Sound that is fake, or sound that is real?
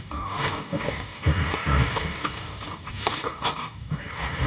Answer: fake